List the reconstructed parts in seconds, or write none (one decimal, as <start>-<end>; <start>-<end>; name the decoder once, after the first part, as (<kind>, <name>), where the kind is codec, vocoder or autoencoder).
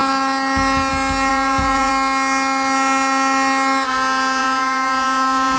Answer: 1.3-1.9 (vocoder, Vocos); 4.4-5.6